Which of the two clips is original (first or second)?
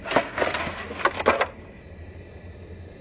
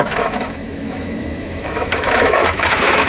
first